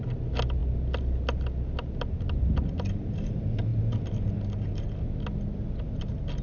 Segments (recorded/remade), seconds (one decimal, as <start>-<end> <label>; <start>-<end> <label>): 0.0-6.4 recorded